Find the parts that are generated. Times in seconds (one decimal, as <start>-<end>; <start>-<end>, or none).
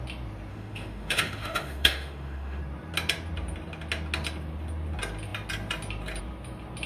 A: 0.5-2.6